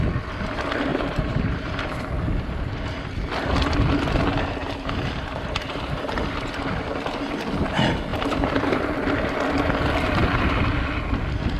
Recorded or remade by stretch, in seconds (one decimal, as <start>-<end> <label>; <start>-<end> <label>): 0.0-0.9 recorded; 0.9-2.0 remade; 2.0-4.6 recorded; 4.6-6.2 remade; 6.2-8.1 recorded; 8.1-8.8 remade; 8.8-11.6 recorded